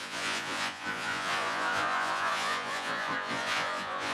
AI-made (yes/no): yes